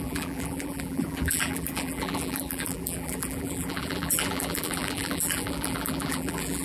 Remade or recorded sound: remade